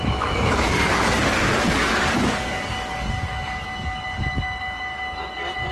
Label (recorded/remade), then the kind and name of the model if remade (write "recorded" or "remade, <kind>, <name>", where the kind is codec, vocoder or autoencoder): remade, codec, DAC